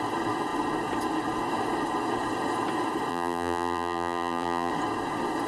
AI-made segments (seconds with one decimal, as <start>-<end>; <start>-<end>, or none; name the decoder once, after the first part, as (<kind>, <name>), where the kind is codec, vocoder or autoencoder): 3.1-4.7 (vocoder, BigVGAN v2)